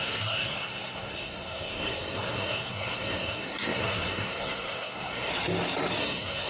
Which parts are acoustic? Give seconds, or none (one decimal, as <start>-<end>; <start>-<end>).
5.3-6.0